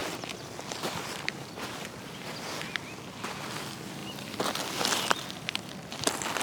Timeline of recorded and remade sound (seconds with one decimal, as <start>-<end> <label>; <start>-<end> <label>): 0.0-1.3 remade; 1.3-4.0 recorded; 4.0-6.4 remade

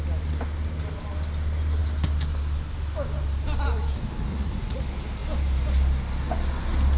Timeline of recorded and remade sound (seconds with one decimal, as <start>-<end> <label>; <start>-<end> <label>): 0.0-4.3 recorded; 4.3-4.8 remade; 4.8-7.0 recorded